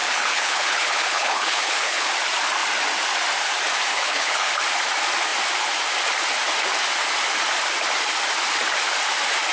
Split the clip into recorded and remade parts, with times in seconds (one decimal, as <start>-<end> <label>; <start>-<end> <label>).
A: 0.0-2.1 remade; 2.1-3.9 recorded; 3.9-4.5 remade; 4.5-9.5 recorded